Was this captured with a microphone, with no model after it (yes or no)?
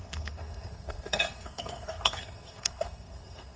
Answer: no